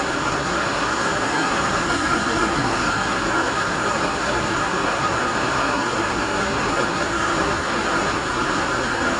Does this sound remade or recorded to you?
remade